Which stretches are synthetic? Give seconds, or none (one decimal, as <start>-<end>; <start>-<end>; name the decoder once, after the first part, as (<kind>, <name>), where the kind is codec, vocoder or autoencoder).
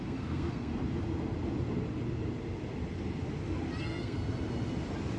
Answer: 0.0-0.7 (codec, SNAC); 3.8-4.2